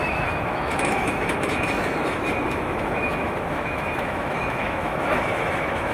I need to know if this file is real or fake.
fake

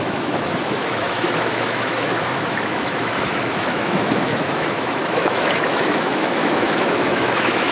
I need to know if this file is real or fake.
fake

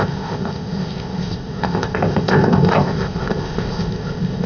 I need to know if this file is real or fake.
fake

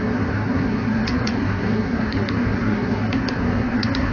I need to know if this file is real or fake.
fake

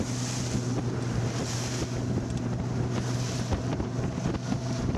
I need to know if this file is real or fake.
real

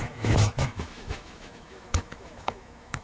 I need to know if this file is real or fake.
fake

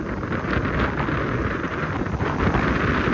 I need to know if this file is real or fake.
real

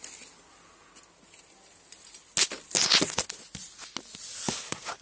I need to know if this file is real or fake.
real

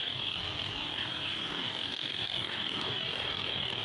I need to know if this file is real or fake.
fake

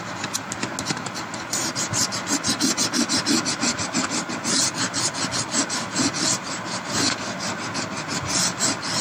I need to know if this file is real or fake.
real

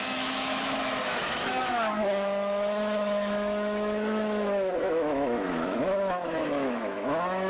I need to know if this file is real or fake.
fake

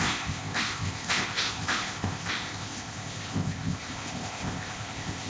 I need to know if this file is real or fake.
fake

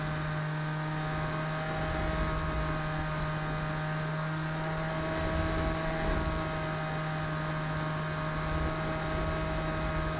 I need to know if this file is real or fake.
real